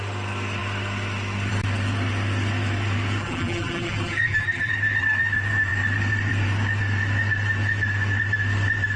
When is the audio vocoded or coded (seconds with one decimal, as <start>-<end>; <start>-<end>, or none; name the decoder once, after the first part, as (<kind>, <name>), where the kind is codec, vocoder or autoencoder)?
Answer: 3.2-4.7 (vocoder, BigVGAN v2)

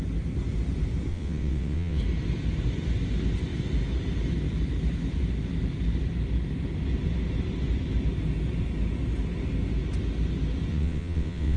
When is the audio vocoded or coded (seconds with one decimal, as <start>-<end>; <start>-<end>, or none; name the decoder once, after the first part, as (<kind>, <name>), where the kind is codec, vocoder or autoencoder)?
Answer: 1.1-2.0 (vocoder, WaveNeXt); 10.7-11.6

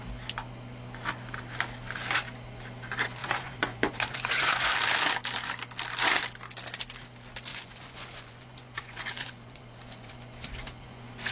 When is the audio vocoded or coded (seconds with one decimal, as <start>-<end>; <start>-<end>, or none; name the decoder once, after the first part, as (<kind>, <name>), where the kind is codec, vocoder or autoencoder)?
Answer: 3.2-4.7 (vocoder, Vocos); 7.5-11.3

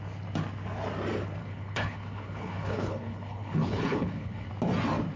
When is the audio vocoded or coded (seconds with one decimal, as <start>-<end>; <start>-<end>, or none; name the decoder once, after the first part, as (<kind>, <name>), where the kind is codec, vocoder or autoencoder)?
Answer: 1.4-4.5 (codec, HILCodec)

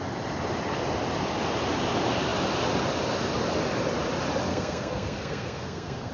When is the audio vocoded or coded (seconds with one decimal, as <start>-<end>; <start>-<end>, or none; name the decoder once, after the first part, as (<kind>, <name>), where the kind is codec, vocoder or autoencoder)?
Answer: 4.5-6.1 (codec, SNAC)

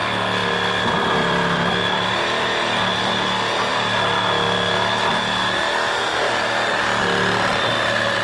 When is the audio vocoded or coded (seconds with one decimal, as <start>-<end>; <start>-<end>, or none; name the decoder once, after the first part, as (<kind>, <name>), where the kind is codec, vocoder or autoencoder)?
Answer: 0.0-2.2 (vocoder, BigVGAN v2)